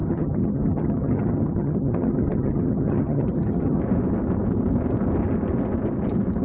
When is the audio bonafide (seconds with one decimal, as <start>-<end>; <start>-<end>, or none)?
3.8-6.4